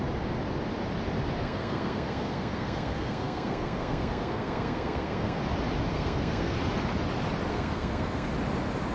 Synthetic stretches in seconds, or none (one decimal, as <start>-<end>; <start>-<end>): 1.4-5.4; 5.9-6.6; 7.5-8.3